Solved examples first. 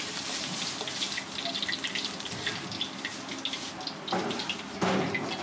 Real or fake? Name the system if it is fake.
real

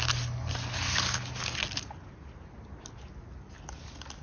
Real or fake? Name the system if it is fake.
real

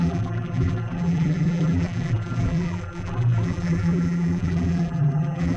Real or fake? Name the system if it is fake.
fake, vocoder, BigVGAN v2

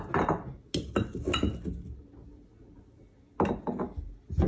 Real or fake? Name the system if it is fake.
real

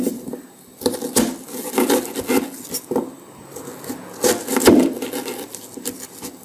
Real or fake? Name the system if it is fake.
real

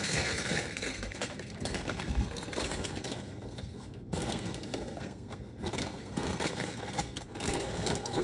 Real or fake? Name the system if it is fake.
fake, codec, SNAC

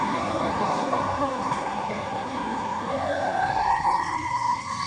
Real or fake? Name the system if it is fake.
fake, codec, SNAC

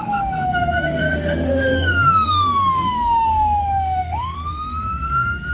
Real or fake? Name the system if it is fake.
fake, autoencoder, DAC-VAE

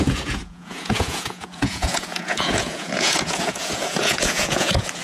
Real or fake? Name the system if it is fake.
fake, vocoder, Vocos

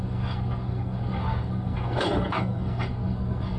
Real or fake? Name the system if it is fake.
fake, codec, SNAC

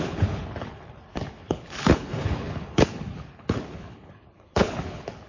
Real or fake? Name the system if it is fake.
fake, codec, HILCodec